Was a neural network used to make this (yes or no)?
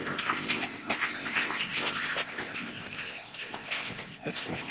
yes